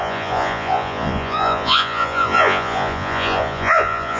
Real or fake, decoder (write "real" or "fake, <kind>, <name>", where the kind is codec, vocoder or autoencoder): fake, vocoder, Vocos